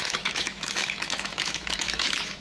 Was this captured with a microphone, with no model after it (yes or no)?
no